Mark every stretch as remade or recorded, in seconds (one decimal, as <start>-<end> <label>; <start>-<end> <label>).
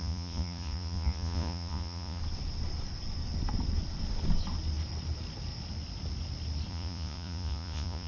0.0-2.2 remade; 2.2-6.7 recorded; 6.7-8.1 remade